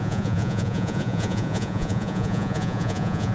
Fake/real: fake